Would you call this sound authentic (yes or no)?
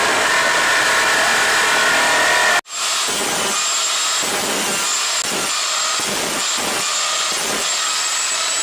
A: yes